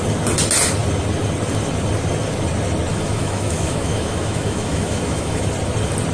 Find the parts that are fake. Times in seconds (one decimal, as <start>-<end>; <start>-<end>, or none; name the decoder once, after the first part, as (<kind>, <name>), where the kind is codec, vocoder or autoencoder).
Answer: 2.9-5.4 (autoencoder, DAC-VAE)